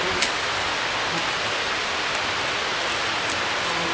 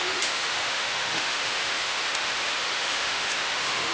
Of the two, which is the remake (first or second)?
second